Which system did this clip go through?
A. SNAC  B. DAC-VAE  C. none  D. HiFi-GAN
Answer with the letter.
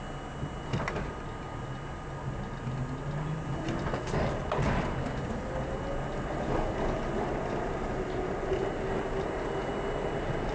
C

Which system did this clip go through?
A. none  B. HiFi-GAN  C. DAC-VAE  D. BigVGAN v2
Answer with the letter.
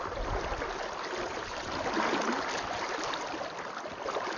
A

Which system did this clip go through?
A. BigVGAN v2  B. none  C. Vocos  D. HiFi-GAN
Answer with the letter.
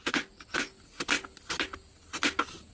B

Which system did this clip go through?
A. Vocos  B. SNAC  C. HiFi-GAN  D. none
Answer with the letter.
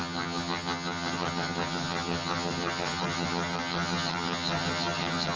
C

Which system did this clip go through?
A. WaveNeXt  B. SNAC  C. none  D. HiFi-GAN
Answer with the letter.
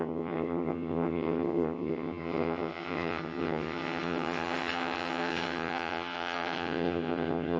D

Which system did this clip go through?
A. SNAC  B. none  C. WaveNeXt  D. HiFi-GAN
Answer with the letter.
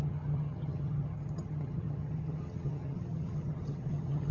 D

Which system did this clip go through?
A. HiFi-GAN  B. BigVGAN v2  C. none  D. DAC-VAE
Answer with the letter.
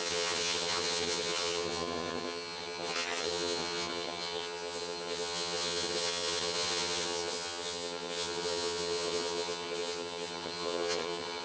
A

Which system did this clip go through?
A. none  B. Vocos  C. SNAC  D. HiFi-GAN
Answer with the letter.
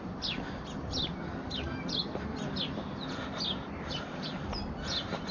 A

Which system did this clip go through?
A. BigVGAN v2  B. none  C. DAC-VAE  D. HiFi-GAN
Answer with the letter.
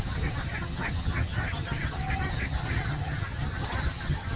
D